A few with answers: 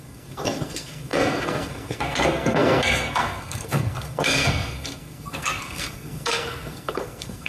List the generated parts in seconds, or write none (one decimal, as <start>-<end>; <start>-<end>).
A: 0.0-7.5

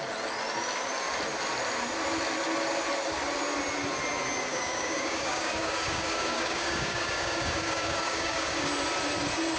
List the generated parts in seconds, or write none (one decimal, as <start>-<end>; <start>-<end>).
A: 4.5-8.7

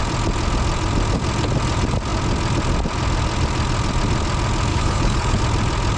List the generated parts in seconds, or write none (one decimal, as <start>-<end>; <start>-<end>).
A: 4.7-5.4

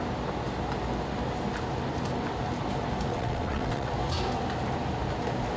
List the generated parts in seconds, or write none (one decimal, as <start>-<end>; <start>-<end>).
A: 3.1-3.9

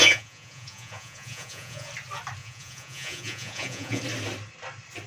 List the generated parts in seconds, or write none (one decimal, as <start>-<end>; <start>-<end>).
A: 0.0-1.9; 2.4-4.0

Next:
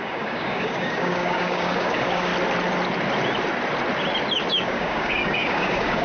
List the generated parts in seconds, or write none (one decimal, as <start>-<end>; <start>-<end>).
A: 0.0-2.3; 4.5-6.0